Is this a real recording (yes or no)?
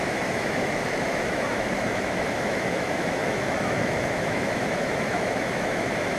no